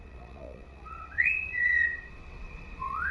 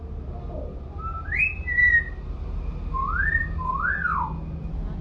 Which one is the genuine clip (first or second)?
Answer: second